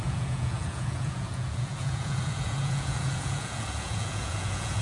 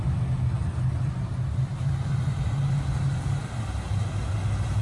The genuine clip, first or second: second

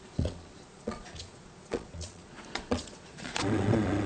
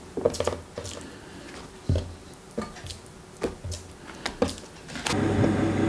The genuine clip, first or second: second